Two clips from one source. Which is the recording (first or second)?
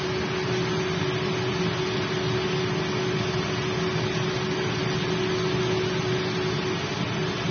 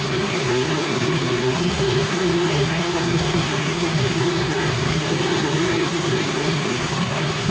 first